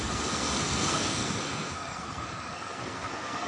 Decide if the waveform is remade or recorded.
remade